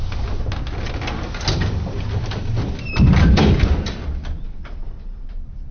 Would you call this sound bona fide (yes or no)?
yes